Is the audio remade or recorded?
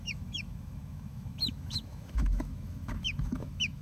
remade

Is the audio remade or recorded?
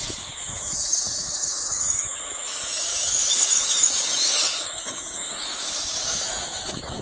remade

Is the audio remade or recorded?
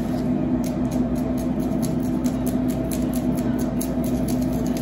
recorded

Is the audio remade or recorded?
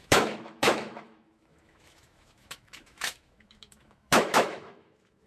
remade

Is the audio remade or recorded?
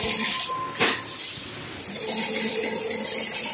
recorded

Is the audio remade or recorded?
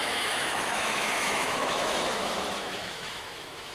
remade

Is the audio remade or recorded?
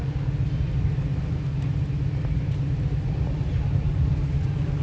recorded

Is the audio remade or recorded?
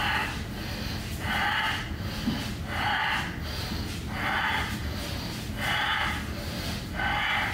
recorded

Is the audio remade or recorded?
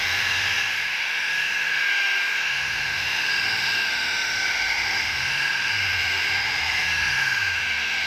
remade